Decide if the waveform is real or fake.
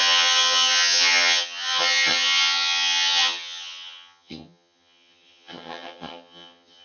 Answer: fake